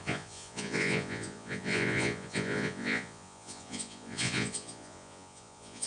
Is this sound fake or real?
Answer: fake